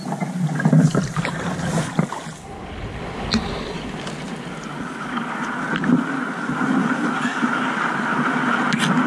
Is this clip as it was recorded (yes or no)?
yes